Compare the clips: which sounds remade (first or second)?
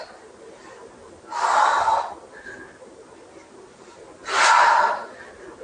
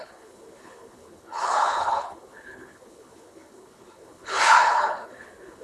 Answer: second